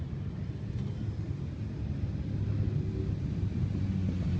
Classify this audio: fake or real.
real